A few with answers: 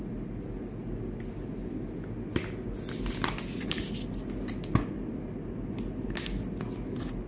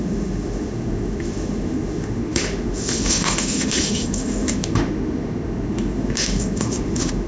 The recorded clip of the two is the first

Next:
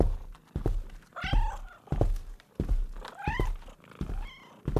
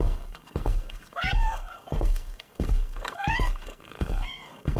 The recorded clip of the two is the first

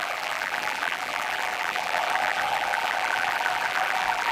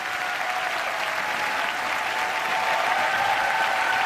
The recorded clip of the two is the second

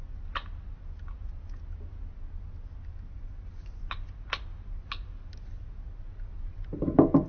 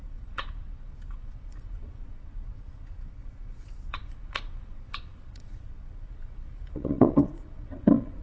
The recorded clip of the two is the first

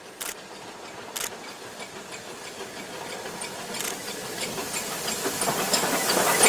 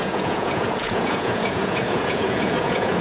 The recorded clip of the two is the first